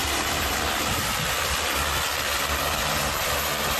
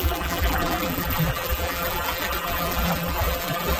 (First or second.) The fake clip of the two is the second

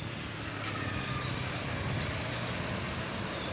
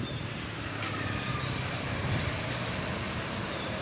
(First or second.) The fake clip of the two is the second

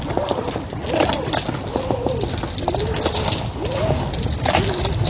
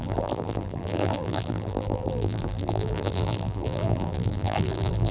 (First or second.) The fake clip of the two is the second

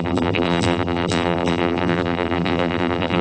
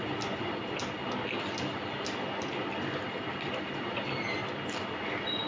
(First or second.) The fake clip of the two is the first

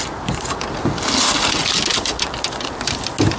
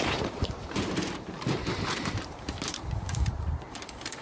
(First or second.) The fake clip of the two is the second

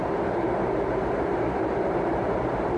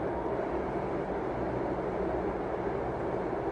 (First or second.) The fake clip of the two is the first